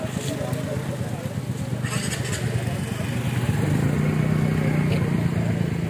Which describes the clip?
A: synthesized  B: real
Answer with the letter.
B